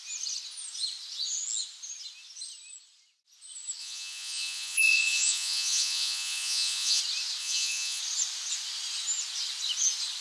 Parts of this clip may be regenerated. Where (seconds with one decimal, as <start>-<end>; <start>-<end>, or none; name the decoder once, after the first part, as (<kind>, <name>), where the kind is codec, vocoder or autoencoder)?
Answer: 3.8-7.0 (vocoder, Vocos); 7.4-8.0